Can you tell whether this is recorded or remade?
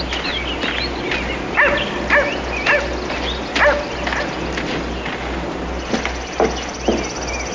recorded